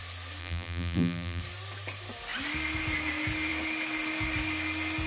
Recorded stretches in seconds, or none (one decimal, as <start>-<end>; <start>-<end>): 0.0-0.4; 1.4-5.1